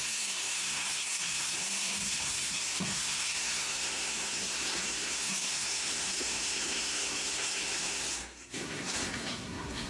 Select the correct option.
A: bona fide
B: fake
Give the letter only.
B